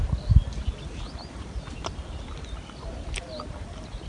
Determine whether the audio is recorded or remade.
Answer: recorded